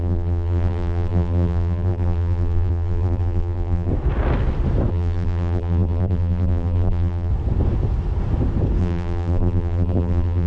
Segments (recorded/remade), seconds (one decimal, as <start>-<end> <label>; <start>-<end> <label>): 0.0-3.9 remade; 3.9-4.9 recorded; 4.9-7.3 remade; 7.3-8.8 recorded; 8.8-10.5 remade